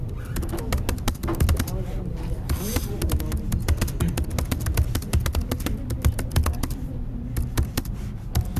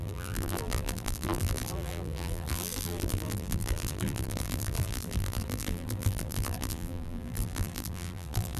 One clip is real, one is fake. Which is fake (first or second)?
second